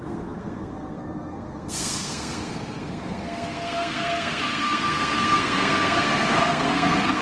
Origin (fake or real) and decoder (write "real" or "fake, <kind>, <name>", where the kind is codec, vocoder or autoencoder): fake, codec, SNAC